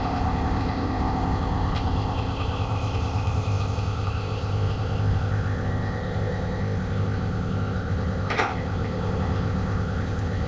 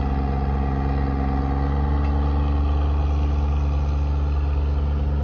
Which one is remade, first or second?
first